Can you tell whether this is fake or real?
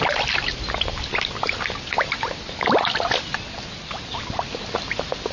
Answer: real